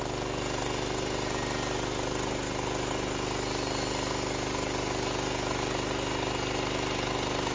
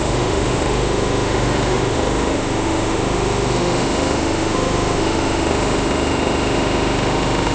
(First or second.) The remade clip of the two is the second